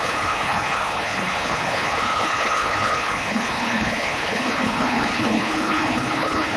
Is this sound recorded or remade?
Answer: remade